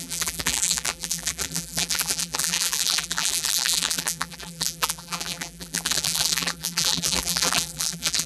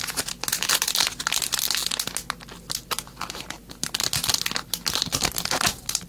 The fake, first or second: first